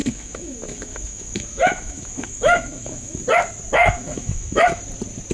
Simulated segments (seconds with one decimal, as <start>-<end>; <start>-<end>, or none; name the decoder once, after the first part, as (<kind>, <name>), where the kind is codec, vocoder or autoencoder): 0.0-3.2 (autoencoder, DAC-VAE); 3.8-4.8